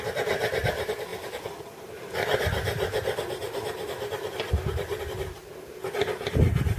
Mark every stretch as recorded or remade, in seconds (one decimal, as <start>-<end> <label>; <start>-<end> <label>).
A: 0.0-6.8 recorded